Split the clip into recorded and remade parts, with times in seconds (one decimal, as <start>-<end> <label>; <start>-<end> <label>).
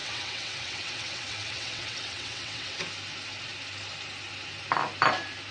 0.0-2.8 remade; 2.8-5.5 recorded